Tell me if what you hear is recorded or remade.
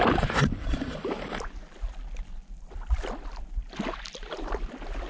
recorded